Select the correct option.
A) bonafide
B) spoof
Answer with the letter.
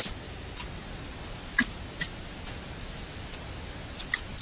A